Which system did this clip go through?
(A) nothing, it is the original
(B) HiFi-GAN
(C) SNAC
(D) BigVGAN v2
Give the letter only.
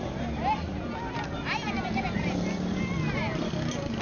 A